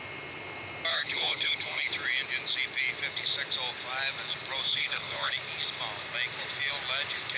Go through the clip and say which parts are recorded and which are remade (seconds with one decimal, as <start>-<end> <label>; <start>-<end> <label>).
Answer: 0.0-0.9 recorded; 0.9-1.9 remade; 1.9-4.7 recorded; 4.7-5.3 remade; 5.3-7.4 recorded